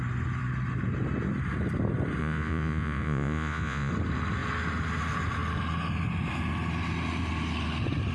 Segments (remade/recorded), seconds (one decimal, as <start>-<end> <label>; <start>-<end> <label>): 0.0-2.2 recorded; 2.2-3.9 remade; 3.9-8.1 recorded